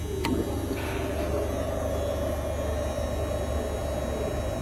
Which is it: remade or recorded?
recorded